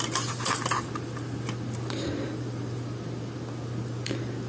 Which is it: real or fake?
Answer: real